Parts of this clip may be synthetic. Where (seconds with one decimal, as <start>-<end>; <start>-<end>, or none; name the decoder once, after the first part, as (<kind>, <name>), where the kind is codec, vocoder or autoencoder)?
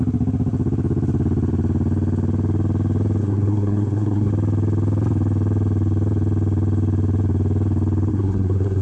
3.2-4.3 (codec, SNAC); 8.1-8.8